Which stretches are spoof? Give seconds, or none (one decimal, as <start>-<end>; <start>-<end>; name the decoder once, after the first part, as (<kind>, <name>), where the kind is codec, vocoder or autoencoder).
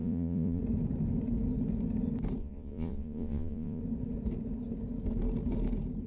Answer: 0.0-0.6 (vocoder, Vocos); 2.4-3.8